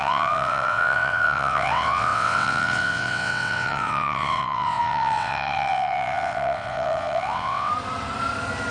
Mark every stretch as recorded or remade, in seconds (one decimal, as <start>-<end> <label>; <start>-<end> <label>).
0.0-7.7 remade; 7.7-8.7 recorded